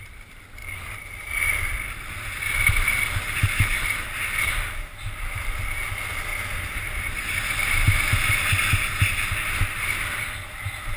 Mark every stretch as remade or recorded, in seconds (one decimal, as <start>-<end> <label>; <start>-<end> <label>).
0.0-11.0 recorded